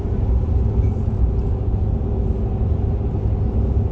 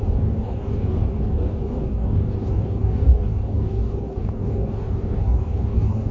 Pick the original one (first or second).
first